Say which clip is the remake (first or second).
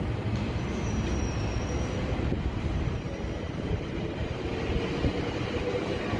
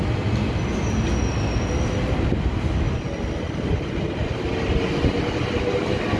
first